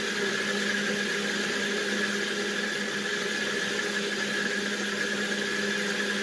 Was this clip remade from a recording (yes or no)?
no